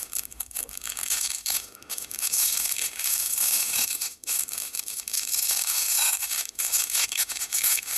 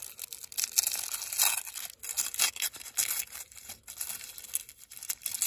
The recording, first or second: second